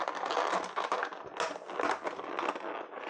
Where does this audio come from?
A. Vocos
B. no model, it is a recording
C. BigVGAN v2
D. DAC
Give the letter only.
B